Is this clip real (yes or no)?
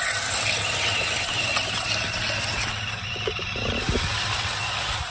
yes